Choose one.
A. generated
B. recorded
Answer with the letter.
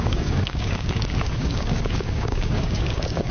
A